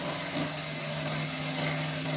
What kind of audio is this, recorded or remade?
recorded